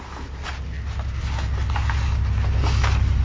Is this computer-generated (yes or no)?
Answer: no